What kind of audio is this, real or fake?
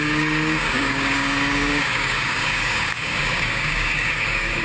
fake